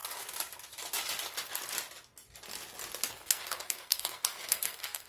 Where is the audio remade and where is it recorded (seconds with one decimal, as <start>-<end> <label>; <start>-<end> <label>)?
0.0-3.1 recorded; 3.1-5.1 remade